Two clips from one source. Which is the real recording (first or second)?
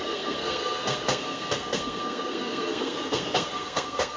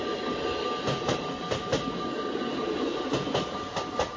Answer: second